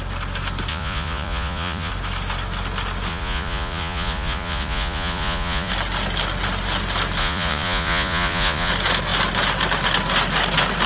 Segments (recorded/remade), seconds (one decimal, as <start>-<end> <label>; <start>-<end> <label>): 0.0-0.7 recorded; 0.7-1.9 remade; 1.9-3.1 recorded; 3.1-5.7 remade; 5.7-7.2 recorded; 7.2-8.7 remade; 8.7-10.9 recorded

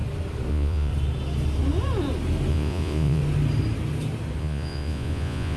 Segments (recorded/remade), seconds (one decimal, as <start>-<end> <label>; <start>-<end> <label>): 0.0-0.5 recorded; 0.5-0.9 remade; 0.9-2.5 recorded; 2.5-3.2 remade; 3.2-4.4 recorded; 4.4-5.6 remade

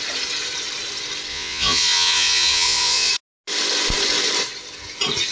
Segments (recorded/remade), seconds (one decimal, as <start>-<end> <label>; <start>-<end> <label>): 0.0-1.3 recorded; 1.3-3.1 remade; 3.1-5.3 recorded